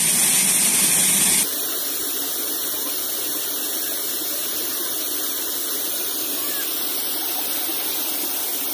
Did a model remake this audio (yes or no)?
no